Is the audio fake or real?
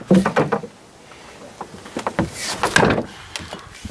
real